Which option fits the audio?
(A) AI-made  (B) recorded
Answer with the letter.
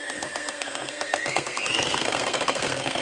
A